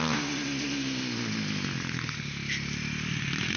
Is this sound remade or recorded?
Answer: recorded